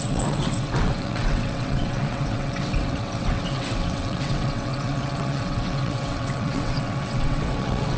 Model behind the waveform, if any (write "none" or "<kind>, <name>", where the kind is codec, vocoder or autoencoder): vocoder, WaveNeXt